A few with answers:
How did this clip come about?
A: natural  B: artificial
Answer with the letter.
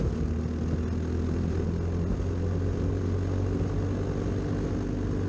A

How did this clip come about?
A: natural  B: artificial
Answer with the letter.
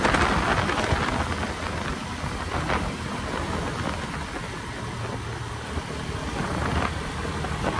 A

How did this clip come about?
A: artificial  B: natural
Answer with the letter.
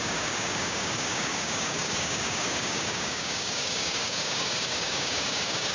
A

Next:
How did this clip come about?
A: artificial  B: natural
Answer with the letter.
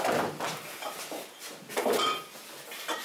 B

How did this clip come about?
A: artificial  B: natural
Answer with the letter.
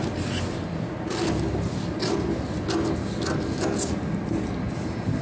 B